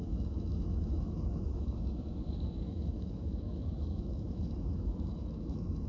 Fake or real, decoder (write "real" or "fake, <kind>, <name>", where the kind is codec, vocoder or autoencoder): fake, autoencoder, DAC-VAE